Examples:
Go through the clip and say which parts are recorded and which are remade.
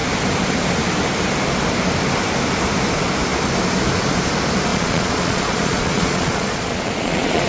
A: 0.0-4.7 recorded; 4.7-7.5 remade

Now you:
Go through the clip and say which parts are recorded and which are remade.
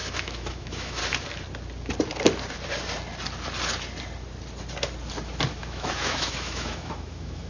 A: 0.0-1.0 remade; 1.0-5.5 recorded; 5.5-7.5 remade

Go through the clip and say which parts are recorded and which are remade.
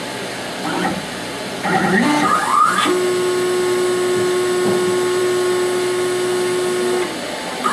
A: 0.0-7.7 recorded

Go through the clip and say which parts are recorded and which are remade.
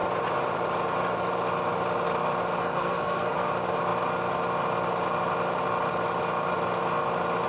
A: 0.0-2.6 recorded; 2.6-3.5 remade; 3.5-7.5 recorded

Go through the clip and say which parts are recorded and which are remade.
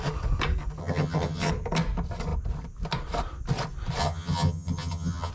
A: 0.0-0.8 recorded; 0.8-1.5 remade; 1.5-4.0 recorded; 4.0-5.3 remade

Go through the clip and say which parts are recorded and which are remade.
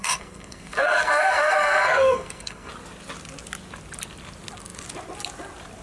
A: 0.0-2.7 remade; 2.7-5.8 recorded